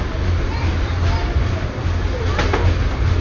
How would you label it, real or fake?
real